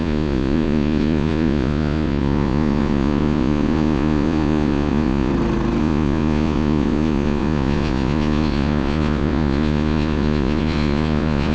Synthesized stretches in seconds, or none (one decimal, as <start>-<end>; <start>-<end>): 0.0-5.3; 5.8-11.5